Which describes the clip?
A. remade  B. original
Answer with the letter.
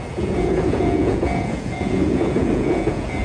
A